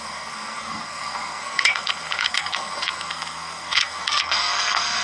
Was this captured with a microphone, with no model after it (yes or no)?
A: no